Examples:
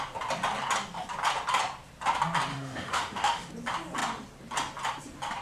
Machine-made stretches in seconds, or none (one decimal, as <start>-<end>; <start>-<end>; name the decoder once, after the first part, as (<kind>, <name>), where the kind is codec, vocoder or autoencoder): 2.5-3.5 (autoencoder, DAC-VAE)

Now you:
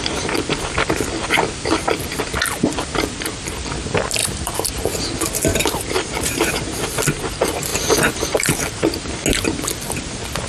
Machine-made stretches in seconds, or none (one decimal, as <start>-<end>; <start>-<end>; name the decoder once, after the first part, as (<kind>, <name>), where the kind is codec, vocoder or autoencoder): 4.2-4.9 (vocoder, BigVGAN v2); 5.5-6.5

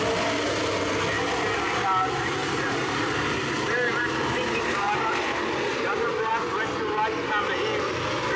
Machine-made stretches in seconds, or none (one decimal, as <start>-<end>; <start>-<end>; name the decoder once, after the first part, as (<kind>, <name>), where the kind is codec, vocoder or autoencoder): 2.4-6.3 (vocoder, BigVGAN v2)

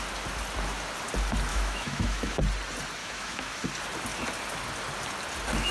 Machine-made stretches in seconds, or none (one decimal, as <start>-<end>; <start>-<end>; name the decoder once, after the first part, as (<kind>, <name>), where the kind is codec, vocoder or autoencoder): 1.5-2.4 (autoencoder, DAC-VAE); 3.0-3.6